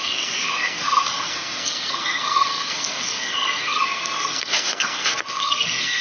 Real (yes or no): no